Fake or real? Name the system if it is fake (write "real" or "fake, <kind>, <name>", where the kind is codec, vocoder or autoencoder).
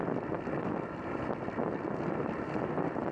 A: real